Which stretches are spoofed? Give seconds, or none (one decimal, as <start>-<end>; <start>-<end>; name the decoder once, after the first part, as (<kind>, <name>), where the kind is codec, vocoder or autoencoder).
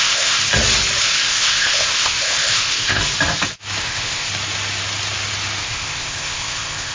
0.0-0.4 (codec, ZipCodec); 1.0-3.0; 3.8-4.3; 5.6-6.9